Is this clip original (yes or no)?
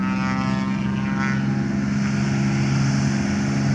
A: yes